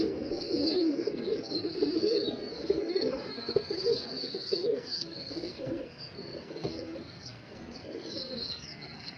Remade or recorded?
remade